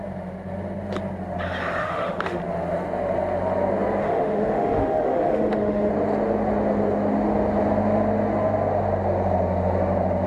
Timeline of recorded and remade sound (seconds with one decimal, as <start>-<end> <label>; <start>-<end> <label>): 0.0-1.8 recorded; 1.8-2.4 remade; 2.4-4.0 recorded; 4.0-5.9 remade; 5.9-10.3 recorded